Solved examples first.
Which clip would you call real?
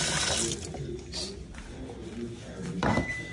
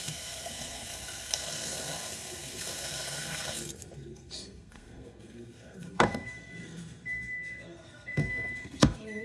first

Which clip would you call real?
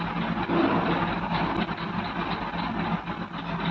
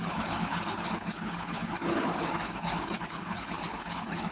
first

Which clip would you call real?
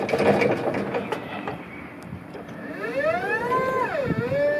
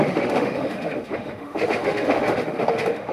first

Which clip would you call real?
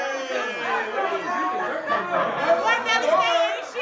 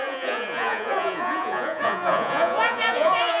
first